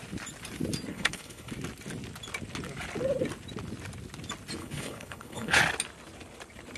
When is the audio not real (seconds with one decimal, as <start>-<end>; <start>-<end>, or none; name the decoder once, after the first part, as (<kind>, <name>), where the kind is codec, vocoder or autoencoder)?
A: 0.9-1.5 (codec, HILCodec); 4.6-5.6